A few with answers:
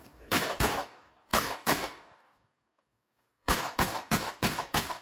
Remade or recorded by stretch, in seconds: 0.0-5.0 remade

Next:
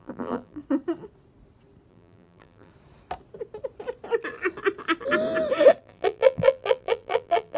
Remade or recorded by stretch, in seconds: 0.0-0.6 remade; 0.6-1.9 recorded; 1.9-2.7 remade; 2.7-5.8 recorded; 5.8-7.6 remade

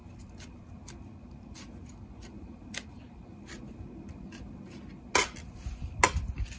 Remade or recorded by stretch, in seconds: 0.0-6.6 recorded